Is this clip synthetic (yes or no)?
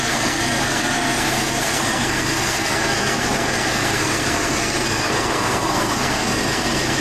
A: yes